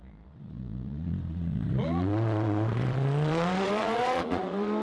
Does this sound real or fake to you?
fake